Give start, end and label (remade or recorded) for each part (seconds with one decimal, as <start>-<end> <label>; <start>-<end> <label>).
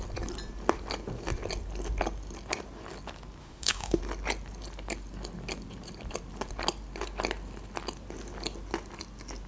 0.0-3.4 recorded; 3.4-4.0 remade; 4.0-9.5 recorded